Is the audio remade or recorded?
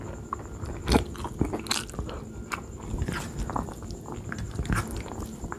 recorded